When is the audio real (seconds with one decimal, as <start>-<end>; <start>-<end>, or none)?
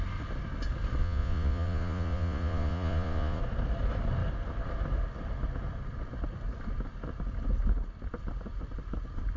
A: 0.0-1.0; 3.4-9.4